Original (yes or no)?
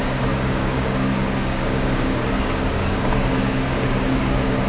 no